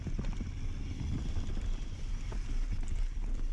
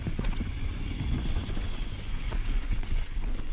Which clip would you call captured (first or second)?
first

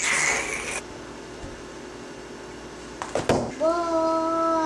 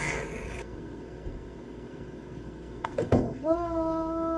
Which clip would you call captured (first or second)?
first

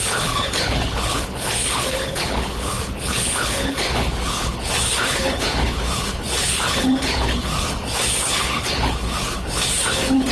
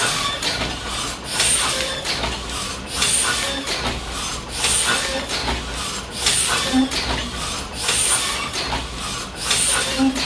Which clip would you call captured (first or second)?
second